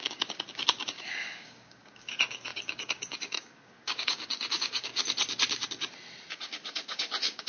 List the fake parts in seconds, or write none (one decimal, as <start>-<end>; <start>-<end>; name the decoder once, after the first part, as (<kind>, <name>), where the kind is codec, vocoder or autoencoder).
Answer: 0.0-4.9 (codec, DAC); 6.3-7.5